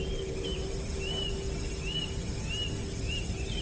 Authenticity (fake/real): real